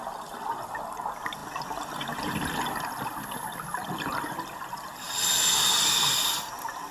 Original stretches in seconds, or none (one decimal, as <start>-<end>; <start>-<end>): 0.0-6.9